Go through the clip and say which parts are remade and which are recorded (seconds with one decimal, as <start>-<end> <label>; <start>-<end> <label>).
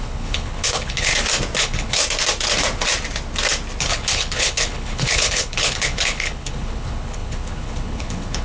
0.0-1.1 remade; 1.1-1.6 recorded; 1.6-2.0 remade; 2.0-3.8 recorded; 3.8-8.4 remade